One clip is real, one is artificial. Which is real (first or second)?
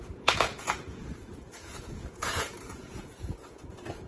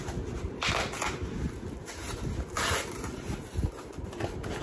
second